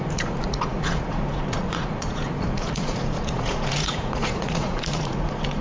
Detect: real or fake fake